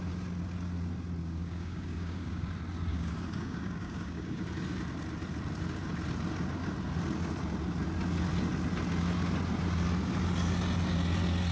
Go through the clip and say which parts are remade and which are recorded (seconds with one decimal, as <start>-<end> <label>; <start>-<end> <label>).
0.0-1.2 recorded; 1.2-2.4 remade; 2.4-2.9 recorded; 2.9-4.4 remade; 4.4-11.5 recorded